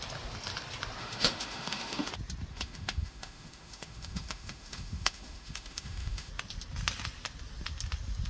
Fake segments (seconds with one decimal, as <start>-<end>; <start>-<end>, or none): 1.0-2.1; 2.5-6.3